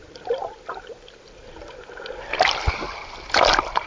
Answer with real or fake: real